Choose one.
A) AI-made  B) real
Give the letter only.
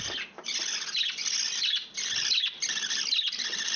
B